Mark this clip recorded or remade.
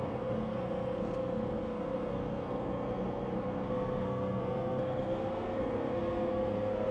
remade